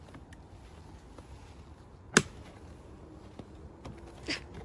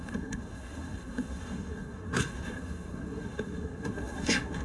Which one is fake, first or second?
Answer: second